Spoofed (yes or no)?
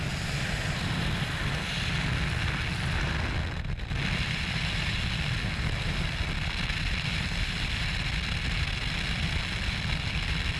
no